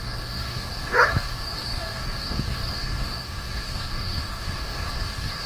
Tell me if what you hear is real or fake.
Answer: fake